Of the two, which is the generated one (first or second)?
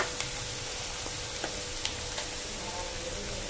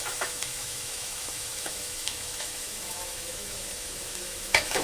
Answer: second